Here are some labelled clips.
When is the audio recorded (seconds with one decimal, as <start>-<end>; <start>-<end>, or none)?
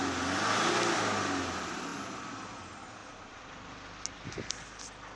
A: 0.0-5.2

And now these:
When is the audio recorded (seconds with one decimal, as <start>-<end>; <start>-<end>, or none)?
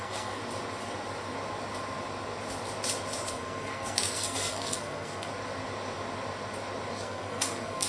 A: 0.4-3.3; 5.3-6.9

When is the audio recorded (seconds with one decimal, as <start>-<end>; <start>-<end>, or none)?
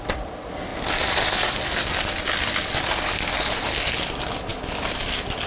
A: 0.0-5.5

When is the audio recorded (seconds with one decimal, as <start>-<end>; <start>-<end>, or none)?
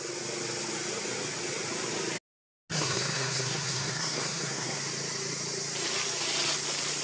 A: 0.0-2.7; 4.8-7.0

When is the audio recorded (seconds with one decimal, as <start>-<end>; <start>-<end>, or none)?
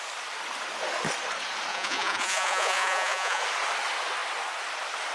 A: 0.0-1.7; 3.4-5.1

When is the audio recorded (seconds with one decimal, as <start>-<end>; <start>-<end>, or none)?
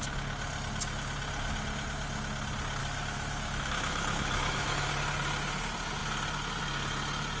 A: 0.0-2.8; 4.9-7.4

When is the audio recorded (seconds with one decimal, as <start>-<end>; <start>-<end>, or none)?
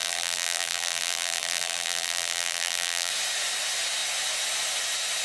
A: 3.1-5.2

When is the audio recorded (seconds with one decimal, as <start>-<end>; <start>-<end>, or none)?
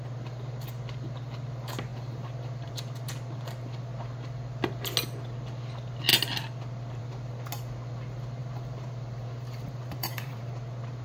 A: 0.0-1.9; 2.7-8.4; 10.5-11.0